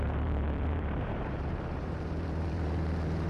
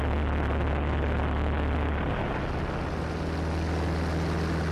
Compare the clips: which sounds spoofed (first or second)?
first